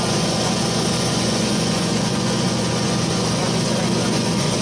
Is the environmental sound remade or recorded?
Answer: remade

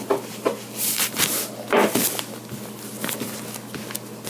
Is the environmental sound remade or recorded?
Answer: recorded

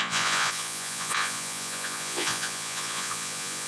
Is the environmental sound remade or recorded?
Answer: remade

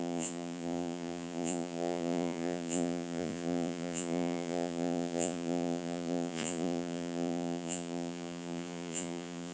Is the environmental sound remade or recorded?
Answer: remade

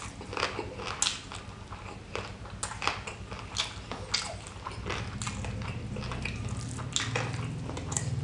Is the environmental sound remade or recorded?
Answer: recorded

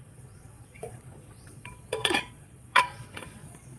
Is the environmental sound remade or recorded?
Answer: remade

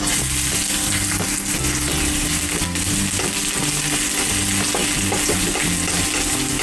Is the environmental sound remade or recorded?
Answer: recorded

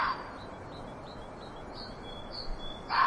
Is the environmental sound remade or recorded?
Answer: recorded